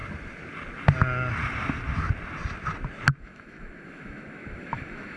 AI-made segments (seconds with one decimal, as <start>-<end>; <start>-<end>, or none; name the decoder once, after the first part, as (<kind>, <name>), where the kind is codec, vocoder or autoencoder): 3.1-5.2 (autoencoder, DAC-VAE)